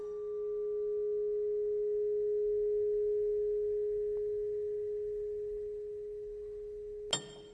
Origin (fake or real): real